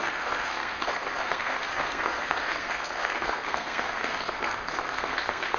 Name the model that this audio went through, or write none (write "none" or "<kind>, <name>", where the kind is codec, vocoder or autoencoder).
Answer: codec, SNAC